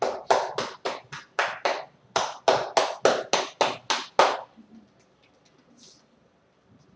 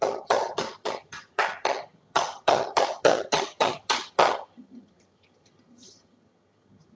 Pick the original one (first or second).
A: first